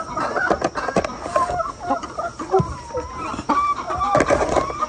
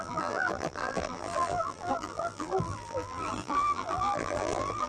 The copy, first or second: second